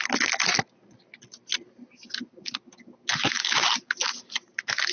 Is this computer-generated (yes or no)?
no